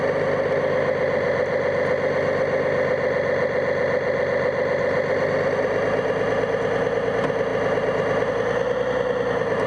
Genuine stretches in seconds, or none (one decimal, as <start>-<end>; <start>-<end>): 0.0-9.7